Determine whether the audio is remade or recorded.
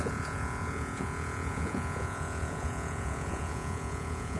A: remade